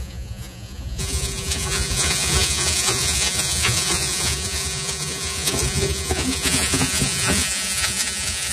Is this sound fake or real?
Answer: fake